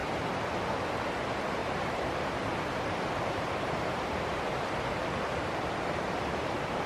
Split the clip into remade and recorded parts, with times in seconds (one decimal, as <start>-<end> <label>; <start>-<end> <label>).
0.0-1.6 recorded; 1.6-4.4 remade; 4.4-6.9 recorded